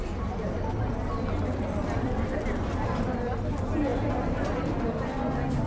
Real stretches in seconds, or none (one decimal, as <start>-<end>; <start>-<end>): 0.0-5.7